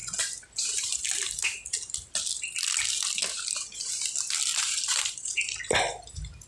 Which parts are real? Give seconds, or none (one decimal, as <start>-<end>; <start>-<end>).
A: 0.0-4.5; 5.3-6.5

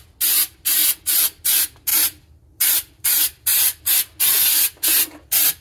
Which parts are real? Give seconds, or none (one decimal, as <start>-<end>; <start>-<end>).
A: 0.0-1.9; 4.0-5.6

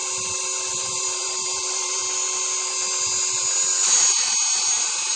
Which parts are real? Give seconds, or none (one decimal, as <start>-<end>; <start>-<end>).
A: 0.0-0.7; 2.0-5.1

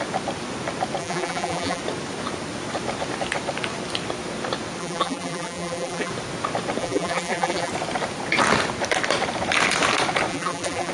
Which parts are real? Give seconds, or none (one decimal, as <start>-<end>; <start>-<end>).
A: 0.0-1.0; 1.8-4.8; 6.1-6.8; 7.7-10.3

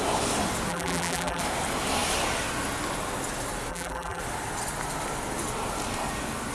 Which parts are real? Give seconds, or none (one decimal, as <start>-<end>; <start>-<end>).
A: 0.0-0.7; 1.4-3.7; 4.2-6.5

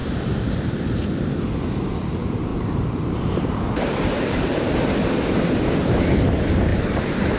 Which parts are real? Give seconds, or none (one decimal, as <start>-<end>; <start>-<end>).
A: 1.1-2.5; 5.7-6.7

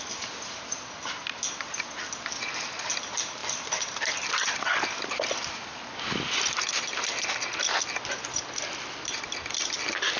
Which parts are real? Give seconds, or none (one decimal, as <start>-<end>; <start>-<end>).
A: 0.0-10.2

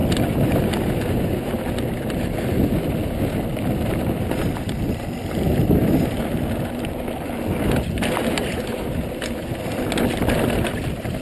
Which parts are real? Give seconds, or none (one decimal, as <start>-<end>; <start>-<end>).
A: 0.0-11.2